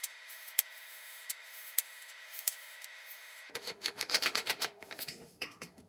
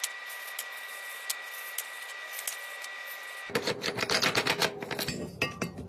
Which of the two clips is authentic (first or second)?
second